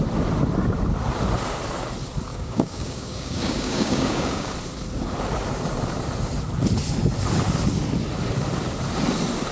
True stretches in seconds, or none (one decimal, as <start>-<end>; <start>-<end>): 0.0-2.3; 4.5-9.5